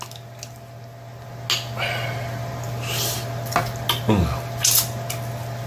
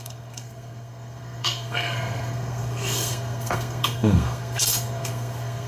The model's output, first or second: second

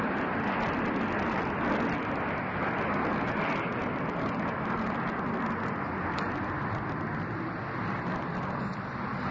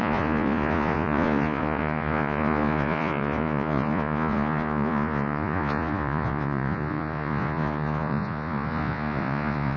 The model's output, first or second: second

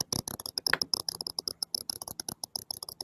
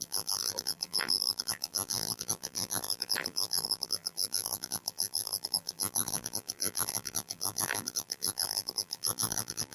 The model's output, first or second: second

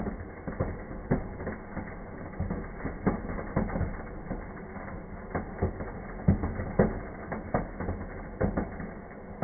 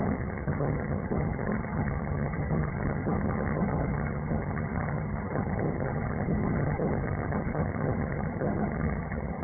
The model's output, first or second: second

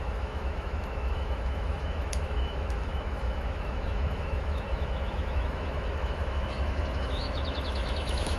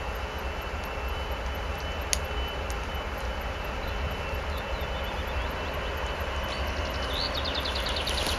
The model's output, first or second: first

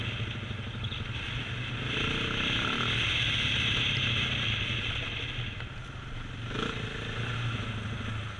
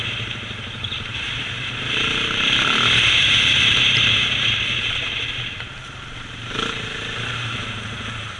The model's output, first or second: second